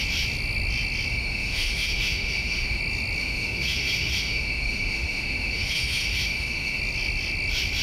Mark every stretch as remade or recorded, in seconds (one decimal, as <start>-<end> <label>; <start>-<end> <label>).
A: 0.0-1.1 recorded; 1.1-2.8 remade; 2.8-3.2 recorded; 3.2-6.8 remade; 6.8-7.8 recorded